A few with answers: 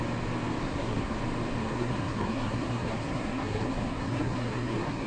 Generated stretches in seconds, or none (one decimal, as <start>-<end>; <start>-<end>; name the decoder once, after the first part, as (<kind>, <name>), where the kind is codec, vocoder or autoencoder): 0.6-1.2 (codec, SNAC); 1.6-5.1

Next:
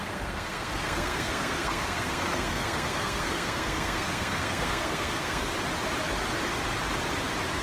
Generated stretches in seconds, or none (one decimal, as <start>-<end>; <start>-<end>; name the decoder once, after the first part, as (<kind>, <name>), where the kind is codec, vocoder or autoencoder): 0.0-5.5 (codec, SNAC)

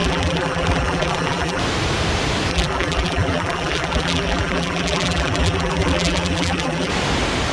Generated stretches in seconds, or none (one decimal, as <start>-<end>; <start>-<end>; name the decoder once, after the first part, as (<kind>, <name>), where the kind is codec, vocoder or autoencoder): 0.0-1.6 (vocoder, BigVGAN v2); 2.5-6.9

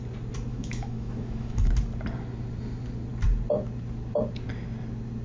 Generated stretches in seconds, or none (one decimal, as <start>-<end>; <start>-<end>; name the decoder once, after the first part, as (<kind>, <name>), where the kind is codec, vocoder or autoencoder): 0.5-1.7 (autoencoder, DAC-VAE)

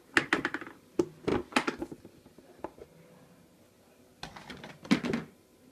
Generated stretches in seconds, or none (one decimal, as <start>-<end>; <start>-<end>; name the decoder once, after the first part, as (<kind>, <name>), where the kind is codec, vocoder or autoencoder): none

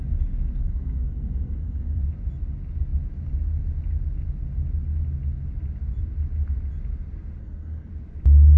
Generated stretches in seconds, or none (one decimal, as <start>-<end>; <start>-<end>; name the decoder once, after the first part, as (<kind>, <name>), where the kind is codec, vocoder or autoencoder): 0.6-2.0 (codec, SNAC); 7.4-7.9